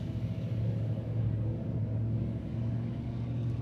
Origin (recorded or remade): remade